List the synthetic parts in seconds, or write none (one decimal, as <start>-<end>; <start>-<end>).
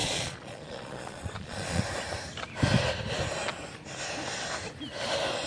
0.0-1.8